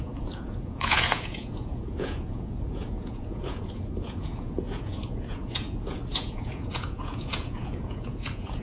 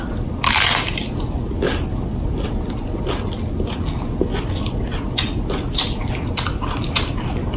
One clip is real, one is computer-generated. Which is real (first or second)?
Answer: second